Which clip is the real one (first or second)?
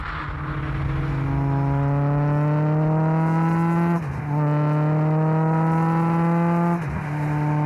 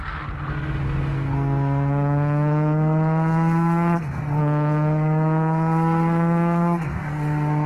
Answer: first